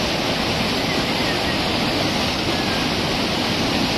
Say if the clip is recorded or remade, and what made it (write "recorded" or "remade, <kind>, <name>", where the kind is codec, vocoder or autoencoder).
recorded